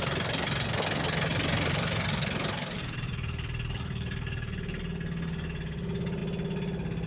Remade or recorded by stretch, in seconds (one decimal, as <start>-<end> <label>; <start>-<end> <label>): 0.0-1.3 recorded; 1.3-4.8 remade; 4.8-7.1 recorded